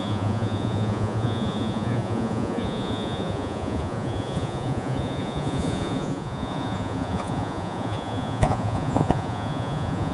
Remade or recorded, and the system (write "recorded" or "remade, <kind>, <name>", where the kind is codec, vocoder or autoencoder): remade, vocoder, Vocos